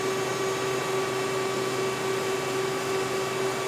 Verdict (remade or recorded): recorded